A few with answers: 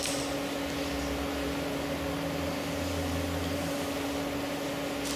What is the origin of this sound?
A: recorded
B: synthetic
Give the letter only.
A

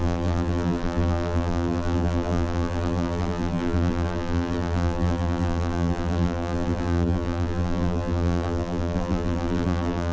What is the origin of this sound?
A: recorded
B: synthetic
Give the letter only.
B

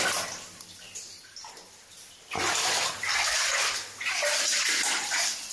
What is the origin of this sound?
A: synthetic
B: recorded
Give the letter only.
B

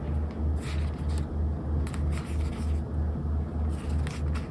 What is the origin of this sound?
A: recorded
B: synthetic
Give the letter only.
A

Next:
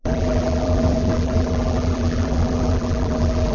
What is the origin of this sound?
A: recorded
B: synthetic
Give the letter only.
B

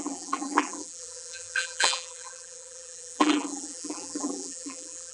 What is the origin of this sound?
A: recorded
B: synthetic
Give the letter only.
B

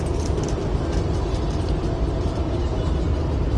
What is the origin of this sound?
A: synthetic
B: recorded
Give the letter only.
B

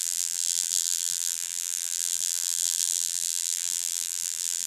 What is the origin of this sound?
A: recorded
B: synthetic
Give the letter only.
B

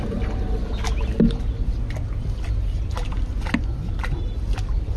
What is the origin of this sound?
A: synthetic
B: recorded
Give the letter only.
B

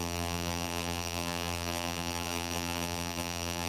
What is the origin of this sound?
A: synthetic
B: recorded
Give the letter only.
A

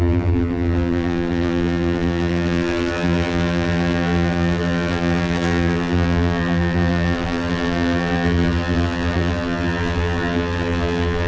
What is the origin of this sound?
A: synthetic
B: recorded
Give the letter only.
A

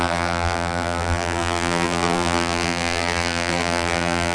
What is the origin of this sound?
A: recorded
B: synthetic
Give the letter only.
B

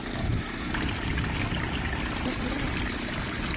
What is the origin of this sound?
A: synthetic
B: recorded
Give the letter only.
B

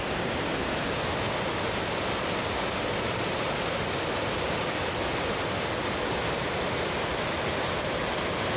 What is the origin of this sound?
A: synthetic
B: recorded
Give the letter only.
B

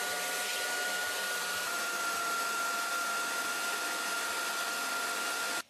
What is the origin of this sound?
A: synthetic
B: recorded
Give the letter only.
B